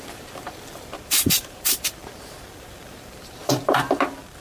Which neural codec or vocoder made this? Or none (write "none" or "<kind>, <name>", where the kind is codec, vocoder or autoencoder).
vocoder, BigVGAN v2